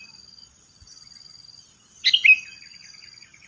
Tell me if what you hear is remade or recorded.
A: recorded